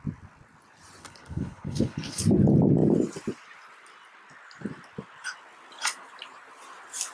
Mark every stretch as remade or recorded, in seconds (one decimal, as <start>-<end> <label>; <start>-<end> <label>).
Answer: 0.0-1.0 recorded; 1.0-2.2 remade; 2.2-7.1 recorded

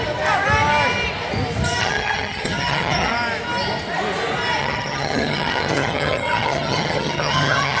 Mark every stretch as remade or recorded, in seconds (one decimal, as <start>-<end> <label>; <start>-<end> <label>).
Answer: 0.0-1.8 recorded; 1.8-3.1 remade; 3.1-4.6 recorded; 4.6-7.8 remade

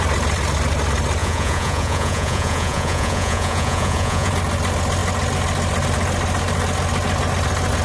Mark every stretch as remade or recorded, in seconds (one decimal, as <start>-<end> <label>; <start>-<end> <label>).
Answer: 0.0-1.2 recorded; 1.2-4.3 remade; 4.3-7.8 recorded

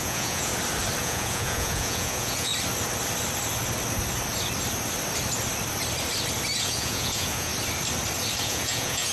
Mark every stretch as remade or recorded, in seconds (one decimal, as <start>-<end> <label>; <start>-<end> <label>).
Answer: 0.0-0.5 remade; 0.5-1.0 recorded; 1.0-2.5 remade; 2.5-6.6 recorded; 6.6-7.5 remade; 7.5-8.4 recorded; 8.4-9.1 remade

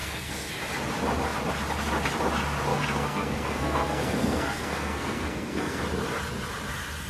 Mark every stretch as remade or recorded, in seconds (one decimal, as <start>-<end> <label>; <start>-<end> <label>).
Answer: 0.0-0.5 remade; 0.5-2.7 recorded; 2.7-5.8 remade; 5.8-7.1 recorded

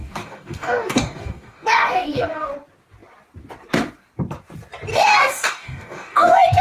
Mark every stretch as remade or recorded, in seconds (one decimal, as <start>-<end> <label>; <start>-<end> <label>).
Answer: 0.0-2.5 remade; 2.5-4.9 recorded; 4.9-6.6 remade

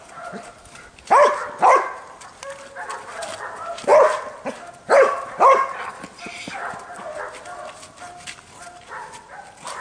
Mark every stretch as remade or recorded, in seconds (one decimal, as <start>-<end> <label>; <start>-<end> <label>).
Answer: 0.0-9.8 recorded